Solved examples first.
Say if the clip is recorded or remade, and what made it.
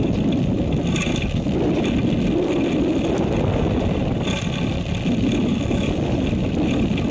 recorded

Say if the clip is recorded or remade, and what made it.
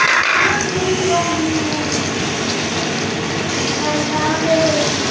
recorded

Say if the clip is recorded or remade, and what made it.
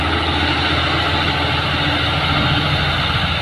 recorded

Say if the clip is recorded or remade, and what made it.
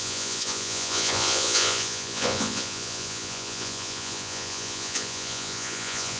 remade, vocoder, Vocos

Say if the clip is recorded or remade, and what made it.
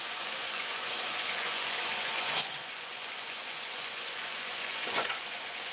remade, vocoder, Vocos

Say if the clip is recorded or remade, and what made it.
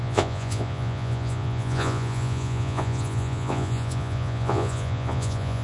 remade, vocoder, Vocos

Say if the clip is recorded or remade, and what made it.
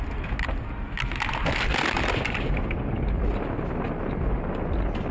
recorded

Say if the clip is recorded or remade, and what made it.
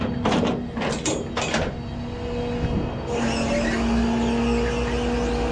recorded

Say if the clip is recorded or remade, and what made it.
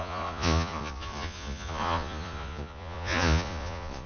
remade, vocoder, Vocos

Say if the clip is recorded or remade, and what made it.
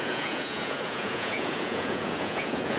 remade, vocoder, Vocos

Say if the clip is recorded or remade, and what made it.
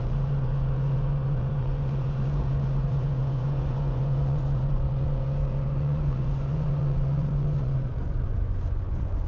remade, vocoder, Vocos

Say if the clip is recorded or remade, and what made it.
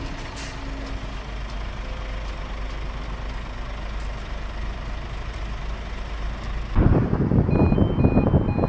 recorded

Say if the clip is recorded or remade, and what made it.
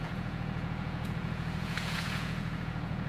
remade, vocoder, Vocos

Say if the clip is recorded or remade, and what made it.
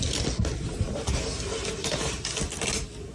recorded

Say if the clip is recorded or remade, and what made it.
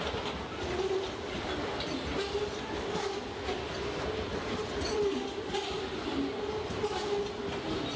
recorded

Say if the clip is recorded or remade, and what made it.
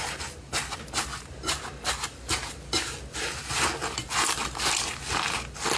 recorded